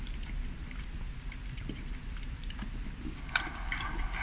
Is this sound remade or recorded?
remade